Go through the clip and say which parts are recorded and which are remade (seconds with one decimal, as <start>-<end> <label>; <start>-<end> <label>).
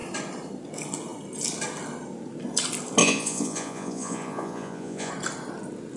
0.0-3.0 recorded; 3.0-5.1 remade; 5.1-6.0 recorded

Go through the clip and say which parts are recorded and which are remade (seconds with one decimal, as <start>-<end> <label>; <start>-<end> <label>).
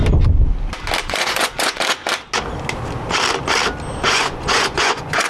0.0-1.0 recorded; 1.0-2.0 remade; 2.0-4.0 recorded; 4.0-5.3 remade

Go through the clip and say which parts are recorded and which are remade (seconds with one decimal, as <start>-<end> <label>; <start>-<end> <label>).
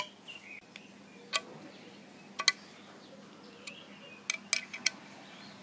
0.0-5.6 recorded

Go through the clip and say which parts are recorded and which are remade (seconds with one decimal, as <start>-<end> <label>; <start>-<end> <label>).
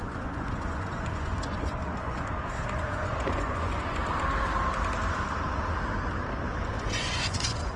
0.0-4.0 remade; 4.0-6.6 recorded; 6.6-7.8 remade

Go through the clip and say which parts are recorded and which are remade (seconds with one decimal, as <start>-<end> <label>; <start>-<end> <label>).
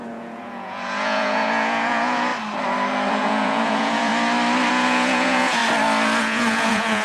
0.0-2.3 remade; 2.3-3.1 recorded; 3.1-4.1 remade; 4.1-4.7 recorded; 4.7-5.6 remade; 5.6-6.2 recorded; 6.2-7.0 remade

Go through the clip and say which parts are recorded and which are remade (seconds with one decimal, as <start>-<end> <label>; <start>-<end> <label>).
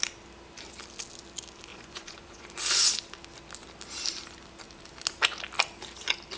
0.0-1.7 recorded; 1.7-2.5 remade; 2.5-6.4 recorded